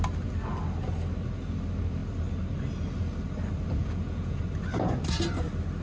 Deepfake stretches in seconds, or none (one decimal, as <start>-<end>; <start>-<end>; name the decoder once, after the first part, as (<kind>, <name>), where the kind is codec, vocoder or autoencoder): 3.8-4.4 (vocoder, Vocos)